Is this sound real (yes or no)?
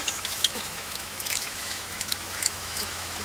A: no